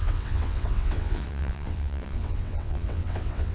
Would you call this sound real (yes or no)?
no